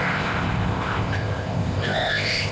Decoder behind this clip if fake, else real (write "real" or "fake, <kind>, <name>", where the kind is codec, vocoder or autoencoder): fake, codec, ZipCodec